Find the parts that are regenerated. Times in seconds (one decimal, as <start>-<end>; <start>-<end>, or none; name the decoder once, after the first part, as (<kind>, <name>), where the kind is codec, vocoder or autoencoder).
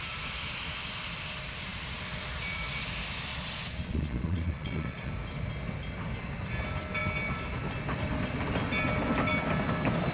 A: 3.3-5.1 (vocoder, Vocos)